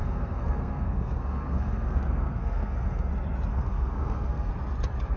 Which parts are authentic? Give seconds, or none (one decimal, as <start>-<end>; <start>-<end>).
3.1-3.5; 4.5-5.2